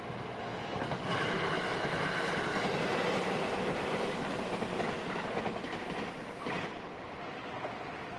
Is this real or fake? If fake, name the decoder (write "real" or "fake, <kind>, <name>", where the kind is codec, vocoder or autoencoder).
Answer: real